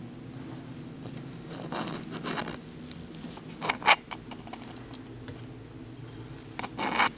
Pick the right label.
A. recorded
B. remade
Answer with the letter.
A